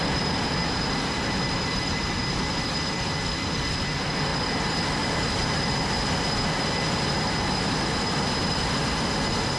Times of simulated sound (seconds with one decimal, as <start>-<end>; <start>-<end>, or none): 0.0-4.3